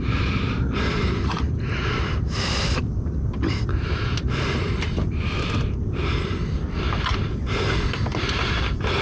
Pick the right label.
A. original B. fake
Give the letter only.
B